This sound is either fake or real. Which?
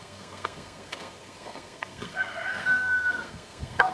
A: fake